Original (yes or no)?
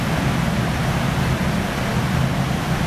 yes